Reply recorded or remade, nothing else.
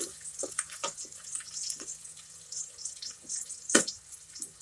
remade